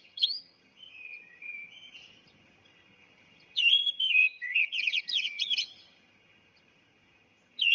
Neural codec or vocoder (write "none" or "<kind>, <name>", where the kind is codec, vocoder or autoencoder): vocoder, HiFi-GAN